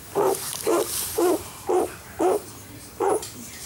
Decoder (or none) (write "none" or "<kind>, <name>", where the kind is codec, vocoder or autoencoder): vocoder, BigVGAN v2